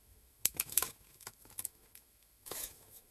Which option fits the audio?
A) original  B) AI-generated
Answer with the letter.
B